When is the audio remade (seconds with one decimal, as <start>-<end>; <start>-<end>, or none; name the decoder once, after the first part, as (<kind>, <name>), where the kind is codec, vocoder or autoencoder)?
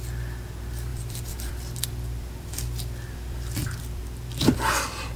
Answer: 0.9-4.0 (vocoder, BigVGAN v2)